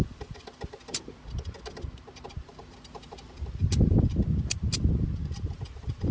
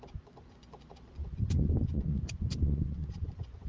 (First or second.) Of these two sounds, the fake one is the second